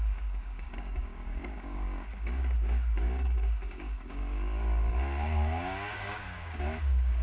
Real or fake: fake